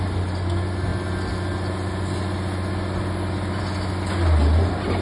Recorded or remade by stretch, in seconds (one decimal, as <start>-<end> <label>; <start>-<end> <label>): 0.0-5.0 recorded